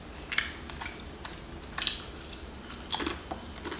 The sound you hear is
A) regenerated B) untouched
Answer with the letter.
B